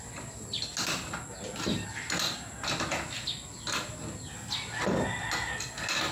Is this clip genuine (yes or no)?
yes